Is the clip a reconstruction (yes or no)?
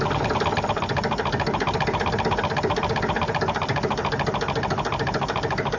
no